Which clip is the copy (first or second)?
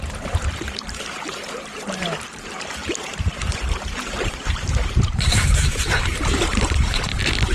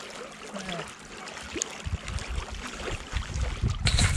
first